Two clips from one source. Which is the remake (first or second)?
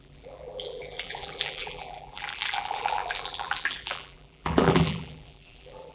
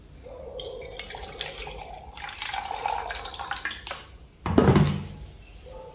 first